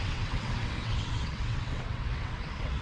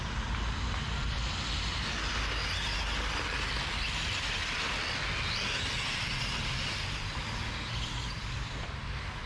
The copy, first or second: first